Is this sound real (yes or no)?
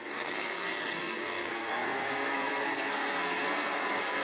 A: no